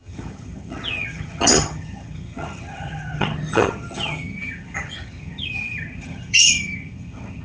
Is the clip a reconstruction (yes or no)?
yes